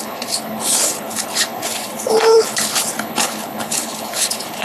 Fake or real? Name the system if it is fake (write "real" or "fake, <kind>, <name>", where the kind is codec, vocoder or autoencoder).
fake, codec, HILCodec